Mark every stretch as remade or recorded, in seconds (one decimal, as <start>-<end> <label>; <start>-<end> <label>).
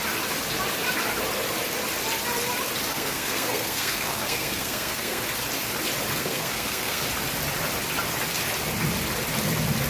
0.0-2.9 recorded; 2.9-5.2 remade; 5.2-6.2 recorded; 6.2-7.0 remade; 7.0-9.9 recorded